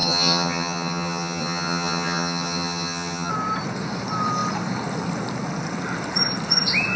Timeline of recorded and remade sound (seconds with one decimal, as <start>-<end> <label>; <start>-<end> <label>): 0.0-3.3 remade; 3.3-7.0 recorded